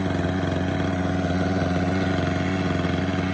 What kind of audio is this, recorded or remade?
recorded